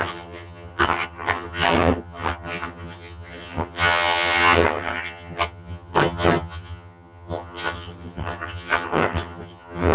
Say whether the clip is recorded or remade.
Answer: remade